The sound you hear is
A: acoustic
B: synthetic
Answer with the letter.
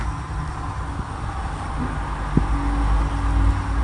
A